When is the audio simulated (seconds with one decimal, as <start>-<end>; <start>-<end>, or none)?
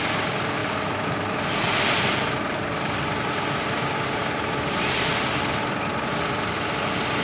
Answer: none